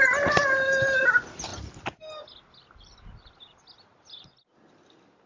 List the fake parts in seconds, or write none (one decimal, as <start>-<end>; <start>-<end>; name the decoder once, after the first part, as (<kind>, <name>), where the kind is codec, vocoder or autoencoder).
none